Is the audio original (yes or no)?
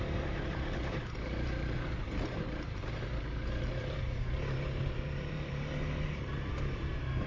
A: no